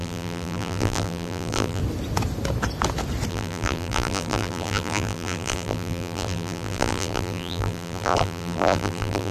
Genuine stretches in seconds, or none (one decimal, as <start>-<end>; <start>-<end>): 1.8-3.3

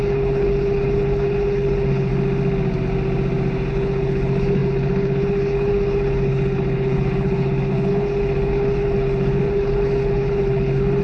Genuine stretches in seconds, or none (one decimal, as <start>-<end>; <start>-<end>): 2.1-3.7

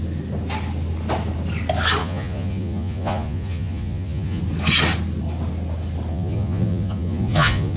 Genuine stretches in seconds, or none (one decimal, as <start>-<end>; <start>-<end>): 0.0-2.0; 4.4-6.1

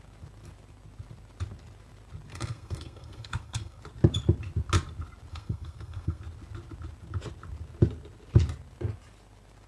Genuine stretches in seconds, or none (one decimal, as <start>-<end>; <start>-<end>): 0.0-2.3; 3.8-5.3; 6.2-9.7

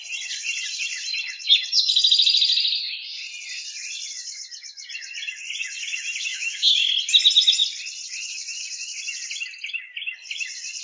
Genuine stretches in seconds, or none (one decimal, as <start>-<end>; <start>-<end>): 0.0-6.3; 6.9-10.8

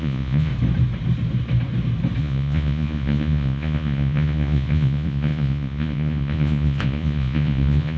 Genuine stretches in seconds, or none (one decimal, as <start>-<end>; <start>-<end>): 0.5-2.2

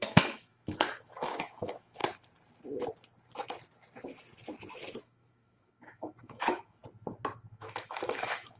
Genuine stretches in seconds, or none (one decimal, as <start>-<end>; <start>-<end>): 2.0-5.0; 6.8-7.5

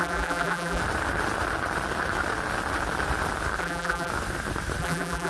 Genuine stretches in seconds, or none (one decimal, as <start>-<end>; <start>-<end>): 0.8-3.6; 4.1-4.8